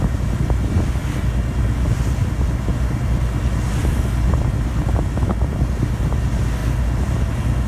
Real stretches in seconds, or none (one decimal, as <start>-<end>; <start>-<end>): 0.0-7.7

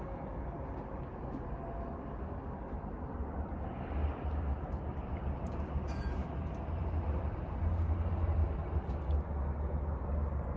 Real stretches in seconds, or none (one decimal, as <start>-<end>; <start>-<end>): 0.0-4.0; 7.5-8.4; 9.0-10.6

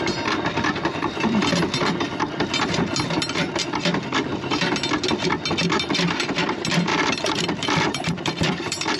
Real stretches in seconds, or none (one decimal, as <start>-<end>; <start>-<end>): 0.0-6.9

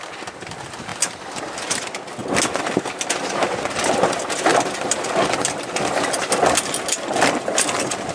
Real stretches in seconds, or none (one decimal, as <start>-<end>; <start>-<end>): 0.0-0.9; 1.7-4.5; 6.5-8.1

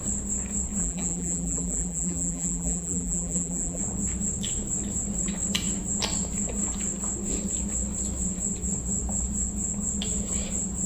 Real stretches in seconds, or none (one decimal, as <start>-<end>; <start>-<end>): 0.0-0.8; 3.8-10.9

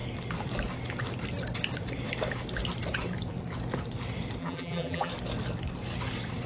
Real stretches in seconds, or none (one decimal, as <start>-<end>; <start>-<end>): 0.0-4.4; 5.1-6.5